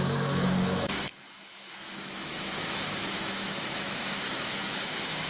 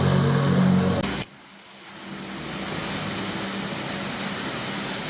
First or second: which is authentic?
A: second